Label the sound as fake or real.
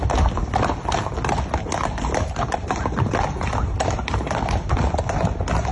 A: real